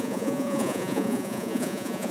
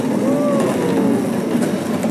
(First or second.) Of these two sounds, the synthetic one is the first